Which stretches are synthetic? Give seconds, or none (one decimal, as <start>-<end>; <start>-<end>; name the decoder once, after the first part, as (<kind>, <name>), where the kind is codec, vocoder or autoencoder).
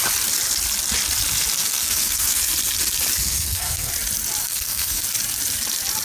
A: 1.6-2.4 (codec, SNAC); 3.2-3.9; 4.4-5.0